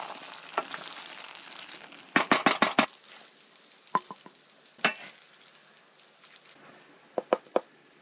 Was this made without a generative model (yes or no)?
yes